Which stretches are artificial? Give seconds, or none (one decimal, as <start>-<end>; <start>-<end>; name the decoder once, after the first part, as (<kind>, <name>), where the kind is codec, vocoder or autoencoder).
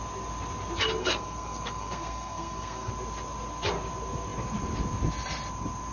1.0-2.9 (codec, SNAC)